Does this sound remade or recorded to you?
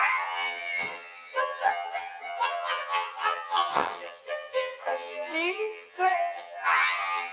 remade